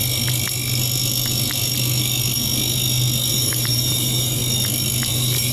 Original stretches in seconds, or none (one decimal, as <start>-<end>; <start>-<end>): 0.0-3.3; 4.4-5.1